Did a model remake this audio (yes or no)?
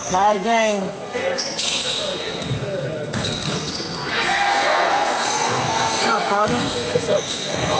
yes